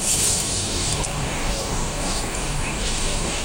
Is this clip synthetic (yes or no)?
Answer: yes